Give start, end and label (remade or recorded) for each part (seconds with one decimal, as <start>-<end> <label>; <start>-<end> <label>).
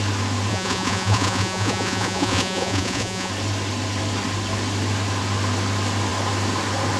0.0-0.5 recorded; 0.5-3.3 remade; 3.3-7.0 recorded